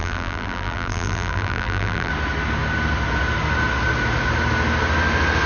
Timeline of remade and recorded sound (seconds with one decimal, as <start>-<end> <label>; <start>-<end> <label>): 0.0-2.1 remade; 2.1-5.5 recorded